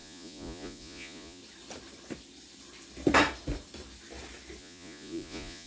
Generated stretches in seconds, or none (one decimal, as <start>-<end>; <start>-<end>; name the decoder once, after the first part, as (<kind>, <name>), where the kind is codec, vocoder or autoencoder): 0.0-1.4 (vocoder, Vocos); 4.6-5.7